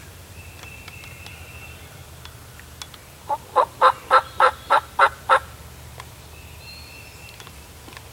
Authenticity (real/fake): real